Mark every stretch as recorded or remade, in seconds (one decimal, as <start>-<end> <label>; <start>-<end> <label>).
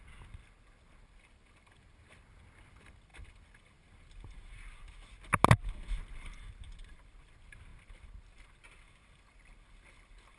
0.0-10.4 recorded